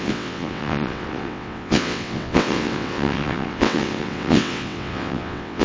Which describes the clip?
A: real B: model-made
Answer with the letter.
B